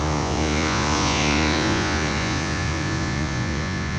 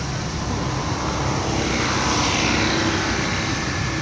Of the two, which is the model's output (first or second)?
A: first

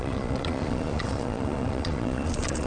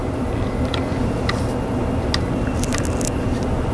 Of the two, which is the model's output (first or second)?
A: first